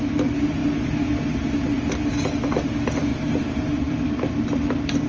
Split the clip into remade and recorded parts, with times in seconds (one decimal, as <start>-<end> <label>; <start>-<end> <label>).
0.0-3.1 recorded; 3.1-4.3 remade; 4.3-5.1 recorded